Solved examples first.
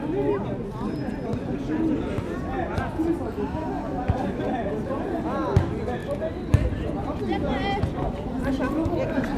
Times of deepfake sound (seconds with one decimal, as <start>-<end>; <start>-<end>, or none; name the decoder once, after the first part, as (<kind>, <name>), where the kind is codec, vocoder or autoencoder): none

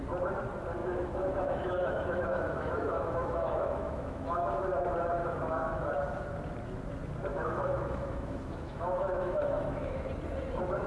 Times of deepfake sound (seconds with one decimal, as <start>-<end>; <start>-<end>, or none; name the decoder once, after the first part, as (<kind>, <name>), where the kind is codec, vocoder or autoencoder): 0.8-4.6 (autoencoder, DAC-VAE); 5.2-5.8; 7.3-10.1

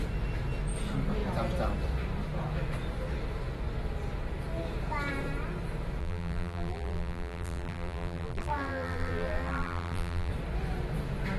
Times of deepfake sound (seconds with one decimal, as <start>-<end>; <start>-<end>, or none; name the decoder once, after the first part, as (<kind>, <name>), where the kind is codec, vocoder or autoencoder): 6.0-10.3 (vocoder, BigVGAN v2)

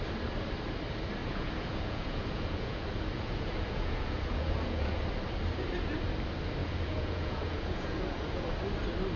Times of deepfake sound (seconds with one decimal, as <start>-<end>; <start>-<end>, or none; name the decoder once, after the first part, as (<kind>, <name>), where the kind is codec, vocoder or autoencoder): 1.2-5.0 (vocoder, Vocos); 6.6-8.5

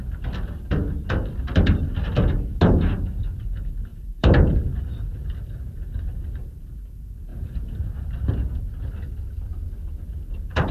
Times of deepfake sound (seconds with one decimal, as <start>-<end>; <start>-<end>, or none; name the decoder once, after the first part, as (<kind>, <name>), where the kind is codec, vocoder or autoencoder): 3.9-6.5 (vocoder, BigVGAN v2); 7.3-7.8

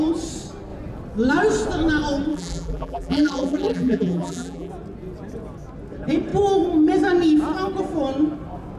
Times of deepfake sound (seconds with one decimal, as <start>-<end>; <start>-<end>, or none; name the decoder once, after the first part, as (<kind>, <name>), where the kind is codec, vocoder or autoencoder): 2.3-4.7 (vocoder, BigVGAN v2)

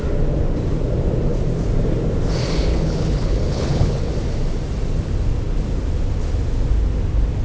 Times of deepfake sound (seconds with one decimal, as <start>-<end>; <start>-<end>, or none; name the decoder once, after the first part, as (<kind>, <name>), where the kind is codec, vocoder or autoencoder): 2.7-4.1 (codec, HILCodec)

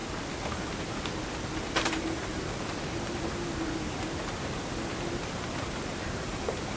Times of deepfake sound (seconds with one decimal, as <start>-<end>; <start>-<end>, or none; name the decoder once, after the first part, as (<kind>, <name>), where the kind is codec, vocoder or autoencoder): 1.7-2.3 (vocoder, BigVGAN v2); 6.2-6.8